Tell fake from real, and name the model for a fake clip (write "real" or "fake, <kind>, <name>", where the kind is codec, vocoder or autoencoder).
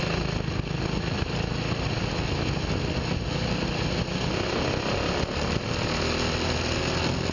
real